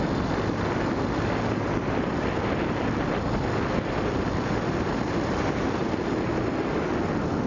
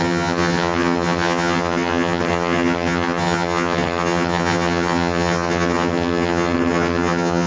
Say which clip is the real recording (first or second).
first